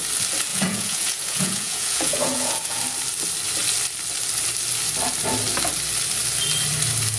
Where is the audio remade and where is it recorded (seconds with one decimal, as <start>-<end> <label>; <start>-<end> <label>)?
0.0-0.5 recorded; 0.5-2.8 remade; 2.8-7.2 recorded